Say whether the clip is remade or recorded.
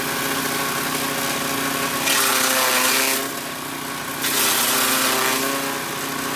recorded